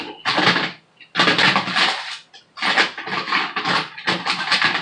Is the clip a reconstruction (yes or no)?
no